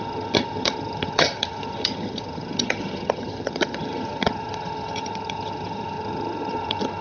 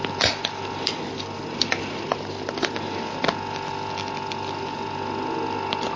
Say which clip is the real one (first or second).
second